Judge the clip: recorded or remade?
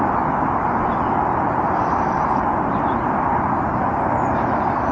recorded